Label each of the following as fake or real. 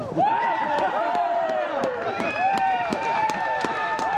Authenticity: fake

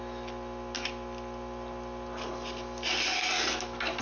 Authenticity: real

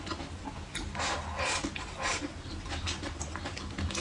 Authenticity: real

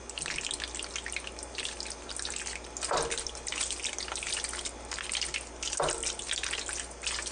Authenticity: real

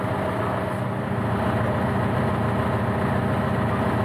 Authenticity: real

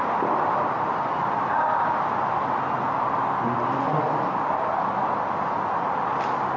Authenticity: real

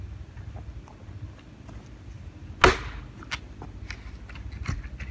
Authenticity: real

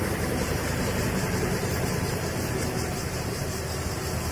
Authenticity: fake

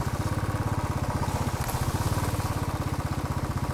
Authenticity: real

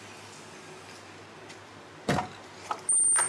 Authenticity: real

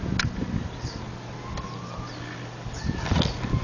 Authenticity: real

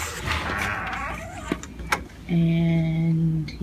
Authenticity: real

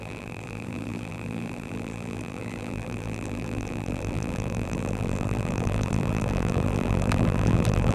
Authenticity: fake